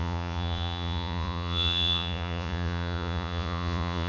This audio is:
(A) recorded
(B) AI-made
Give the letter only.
B